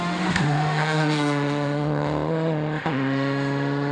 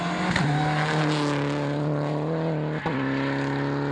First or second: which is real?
second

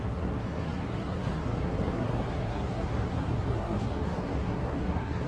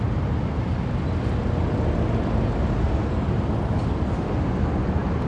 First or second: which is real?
second